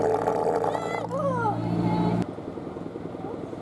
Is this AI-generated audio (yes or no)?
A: no